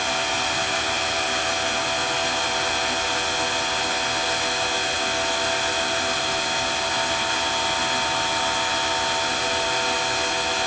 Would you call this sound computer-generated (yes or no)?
no